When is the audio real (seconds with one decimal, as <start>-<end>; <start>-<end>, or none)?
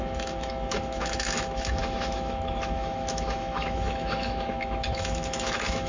none